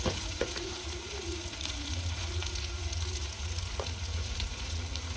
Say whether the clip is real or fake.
fake